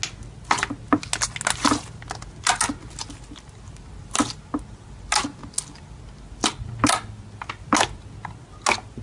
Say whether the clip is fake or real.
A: real